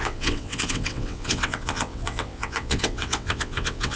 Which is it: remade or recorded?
remade